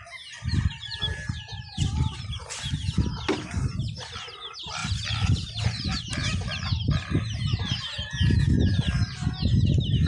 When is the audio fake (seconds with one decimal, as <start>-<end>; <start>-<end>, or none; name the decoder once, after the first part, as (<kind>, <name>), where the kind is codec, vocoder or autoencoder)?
4.8-6.1 (vocoder, BigVGAN v2)